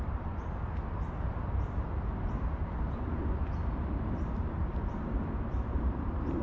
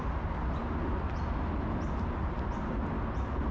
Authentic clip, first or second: second